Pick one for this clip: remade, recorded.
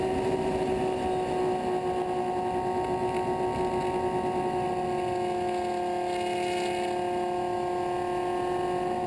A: recorded